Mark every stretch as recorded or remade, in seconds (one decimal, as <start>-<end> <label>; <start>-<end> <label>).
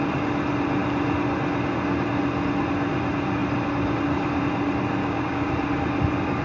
0.0-5.0 recorded; 5.0-5.5 remade; 5.5-6.4 recorded